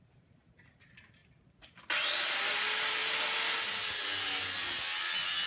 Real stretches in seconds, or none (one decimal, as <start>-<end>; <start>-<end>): 3.0-3.8